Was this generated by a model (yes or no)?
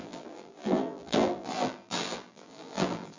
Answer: yes